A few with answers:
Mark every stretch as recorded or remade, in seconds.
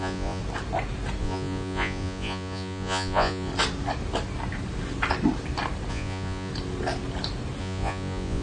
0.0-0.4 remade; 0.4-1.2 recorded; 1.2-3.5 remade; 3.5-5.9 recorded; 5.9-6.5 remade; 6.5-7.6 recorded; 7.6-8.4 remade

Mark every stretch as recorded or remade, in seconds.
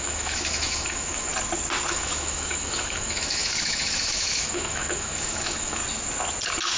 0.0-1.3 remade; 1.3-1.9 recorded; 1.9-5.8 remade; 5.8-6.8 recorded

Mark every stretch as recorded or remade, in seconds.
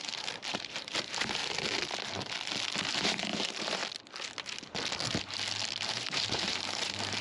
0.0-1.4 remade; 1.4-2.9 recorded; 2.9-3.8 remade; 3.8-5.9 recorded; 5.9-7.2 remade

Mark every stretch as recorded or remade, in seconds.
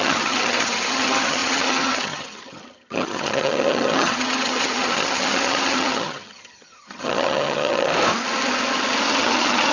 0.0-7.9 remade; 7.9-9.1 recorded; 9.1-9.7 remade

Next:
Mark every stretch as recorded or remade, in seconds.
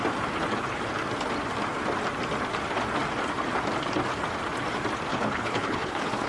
0.0-5.1 recorded; 5.1-6.3 remade